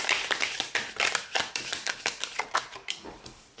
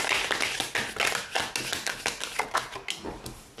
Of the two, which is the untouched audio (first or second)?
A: second